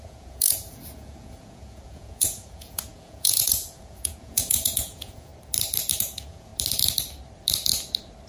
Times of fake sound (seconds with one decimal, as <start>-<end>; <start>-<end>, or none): 0.0-5.3; 6.0-6.5